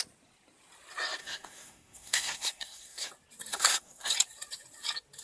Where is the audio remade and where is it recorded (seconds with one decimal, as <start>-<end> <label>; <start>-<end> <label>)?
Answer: 0.0-1.2 recorded; 1.2-3.1 remade; 3.1-3.5 recorded; 3.5-4.1 remade; 4.1-5.2 recorded